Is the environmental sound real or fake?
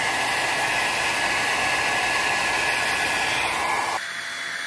real